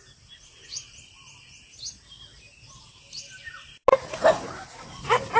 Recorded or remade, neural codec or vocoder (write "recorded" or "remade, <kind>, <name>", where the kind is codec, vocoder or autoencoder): recorded